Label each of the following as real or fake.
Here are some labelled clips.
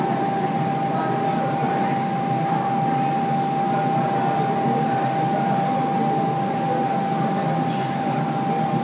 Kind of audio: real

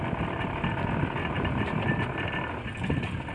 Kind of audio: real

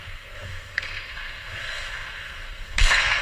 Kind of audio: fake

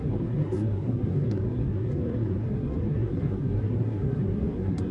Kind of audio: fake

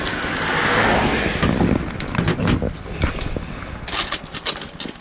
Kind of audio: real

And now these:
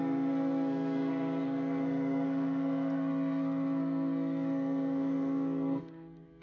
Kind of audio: fake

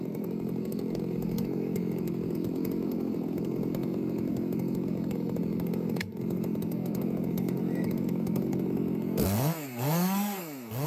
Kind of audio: fake